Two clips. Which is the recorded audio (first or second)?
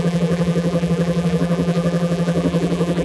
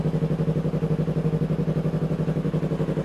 second